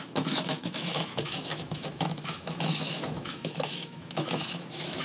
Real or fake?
fake